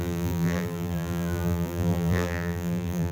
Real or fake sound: fake